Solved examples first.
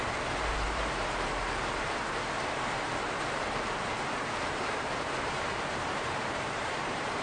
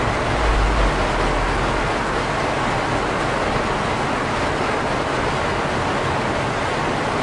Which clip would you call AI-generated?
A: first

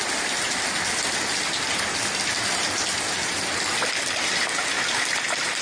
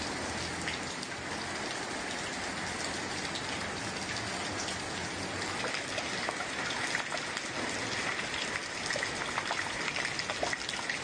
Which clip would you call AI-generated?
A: first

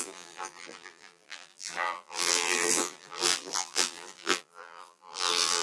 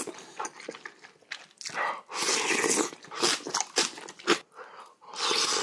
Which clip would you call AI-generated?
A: first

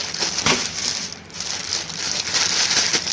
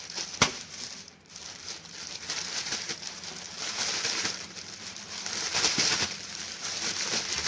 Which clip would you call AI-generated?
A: second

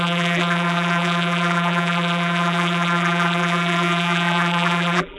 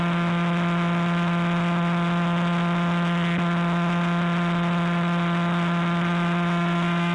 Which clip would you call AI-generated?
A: first